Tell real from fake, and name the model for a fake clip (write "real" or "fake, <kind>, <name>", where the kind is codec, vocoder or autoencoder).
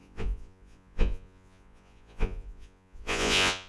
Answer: fake, vocoder, Vocos